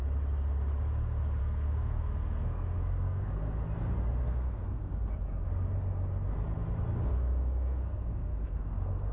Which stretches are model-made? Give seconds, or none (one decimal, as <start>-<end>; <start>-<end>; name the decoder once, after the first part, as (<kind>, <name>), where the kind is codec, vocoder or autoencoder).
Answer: 1.4-3.6 (codec, SNAC); 4.2-4.9; 7.1-9.1